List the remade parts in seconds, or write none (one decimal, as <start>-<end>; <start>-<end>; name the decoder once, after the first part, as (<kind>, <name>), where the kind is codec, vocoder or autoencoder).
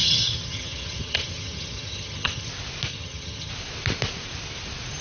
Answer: 0.0-2.5 (vocoder, HiFi-GAN); 2.9-3.5